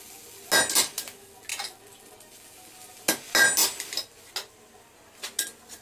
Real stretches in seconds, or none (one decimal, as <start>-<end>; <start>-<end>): 0.0-5.8